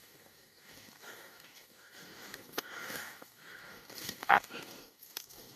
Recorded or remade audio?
remade